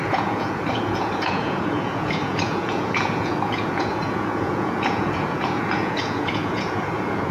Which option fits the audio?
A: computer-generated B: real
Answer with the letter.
A